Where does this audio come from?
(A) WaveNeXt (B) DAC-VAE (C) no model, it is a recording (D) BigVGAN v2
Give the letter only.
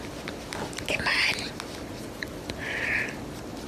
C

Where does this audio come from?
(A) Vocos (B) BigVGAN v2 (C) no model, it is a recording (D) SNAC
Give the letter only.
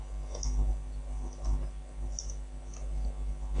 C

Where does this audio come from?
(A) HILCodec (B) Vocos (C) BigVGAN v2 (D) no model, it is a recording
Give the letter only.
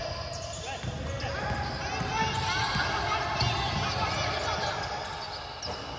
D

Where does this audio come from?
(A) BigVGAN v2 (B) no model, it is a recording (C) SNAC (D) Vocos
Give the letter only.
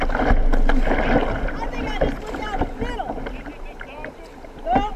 B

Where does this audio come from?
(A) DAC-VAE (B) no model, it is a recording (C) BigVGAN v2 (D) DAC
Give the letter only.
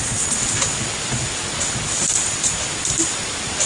B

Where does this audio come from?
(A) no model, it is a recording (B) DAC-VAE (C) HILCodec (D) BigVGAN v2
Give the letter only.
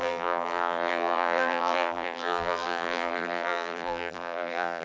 D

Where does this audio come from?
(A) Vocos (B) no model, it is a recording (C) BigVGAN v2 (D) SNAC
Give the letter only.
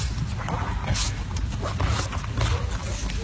B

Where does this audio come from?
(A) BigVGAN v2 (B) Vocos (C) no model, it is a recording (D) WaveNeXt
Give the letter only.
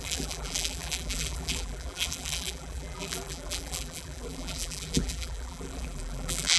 A